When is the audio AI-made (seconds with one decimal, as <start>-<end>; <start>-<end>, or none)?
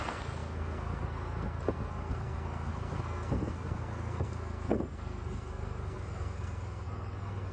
0.0-7.5